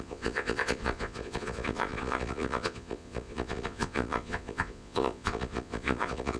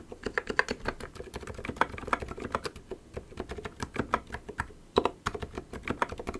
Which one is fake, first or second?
first